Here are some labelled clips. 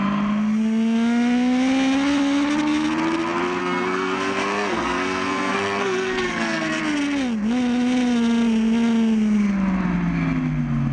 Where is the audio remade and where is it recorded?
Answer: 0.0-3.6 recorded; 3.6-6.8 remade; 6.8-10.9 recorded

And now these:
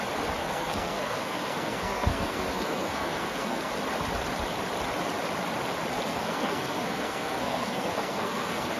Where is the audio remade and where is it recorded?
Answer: 0.0-0.4 recorded; 0.4-3.7 remade; 3.7-6.1 recorded; 6.1-8.8 remade

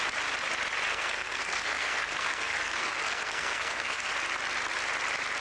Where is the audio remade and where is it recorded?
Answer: 0.0-0.9 recorded; 0.9-4.1 remade; 4.1-5.4 recorded

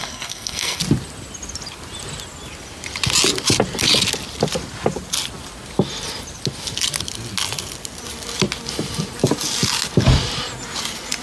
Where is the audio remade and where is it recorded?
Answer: 0.0-0.8 remade; 0.8-11.2 recorded

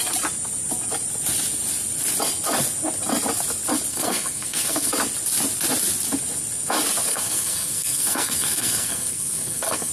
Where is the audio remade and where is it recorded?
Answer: 0.0-3.9 recorded; 3.9-4.9 remade; 4.9-7.1 recorded; 7.1-9.9 remade

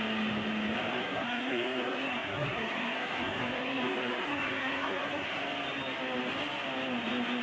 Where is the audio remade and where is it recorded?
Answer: 0.0-1.0 recorded; 1.0-5.4 remade; 5.4-7.4 recorded